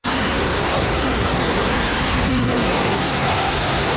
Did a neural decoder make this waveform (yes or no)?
yes